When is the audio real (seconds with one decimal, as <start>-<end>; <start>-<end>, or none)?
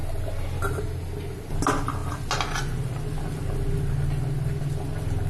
0.0-5.3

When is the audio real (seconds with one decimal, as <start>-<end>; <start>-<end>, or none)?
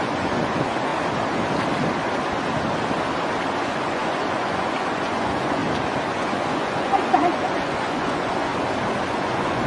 0.9-3.6; 5.6-6.1; 8.5-9.0